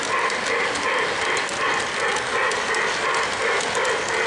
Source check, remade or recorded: recorded